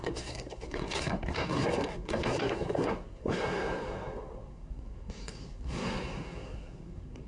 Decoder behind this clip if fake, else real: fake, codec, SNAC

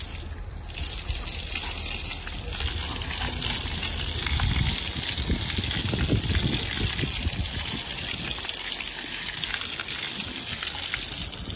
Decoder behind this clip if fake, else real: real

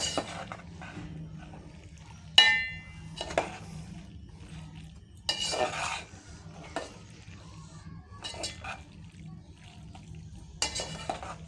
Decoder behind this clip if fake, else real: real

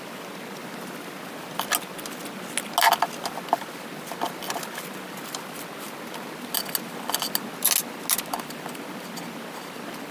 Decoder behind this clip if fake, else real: real